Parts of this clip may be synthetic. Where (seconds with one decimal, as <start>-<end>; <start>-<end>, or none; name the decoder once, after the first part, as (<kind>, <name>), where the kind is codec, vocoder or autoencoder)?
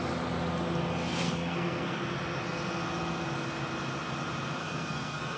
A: 1.1-2.0 (codec, SNAC); 4.6-5.4